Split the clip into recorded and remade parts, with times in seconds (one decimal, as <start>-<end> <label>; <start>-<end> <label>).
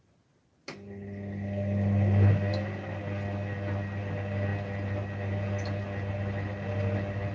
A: 0.0-7.3 recorded